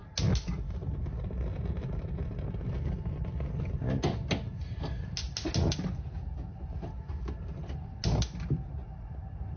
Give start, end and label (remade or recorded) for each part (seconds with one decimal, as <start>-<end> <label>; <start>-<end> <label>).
0.0-9.6 recorded